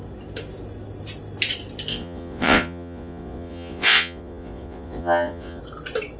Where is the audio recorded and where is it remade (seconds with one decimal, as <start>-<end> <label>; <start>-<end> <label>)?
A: 0.0-1.9 recorded; 1.9-5.6 remade; 5.6-6.2 recorded